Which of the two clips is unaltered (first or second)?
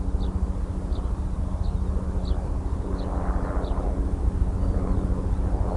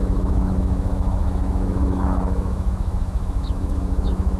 first